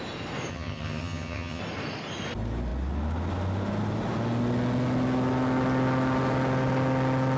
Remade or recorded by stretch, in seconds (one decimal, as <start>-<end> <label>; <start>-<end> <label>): 0.0-0.5 recorded; 0.5-1.6 remade; 1.6-7.4 recorded